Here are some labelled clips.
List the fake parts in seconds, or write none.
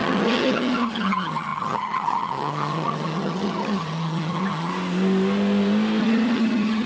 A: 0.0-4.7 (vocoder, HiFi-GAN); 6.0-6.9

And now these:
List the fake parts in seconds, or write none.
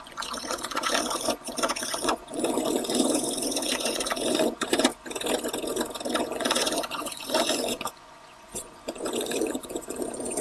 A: 0.0-4.9 (vocoder, Vocos); 6.2-10.4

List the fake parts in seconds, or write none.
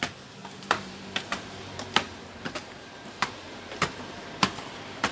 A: 0.4-2.2 (vocoder, BigVGAN v2); 2.6-5.1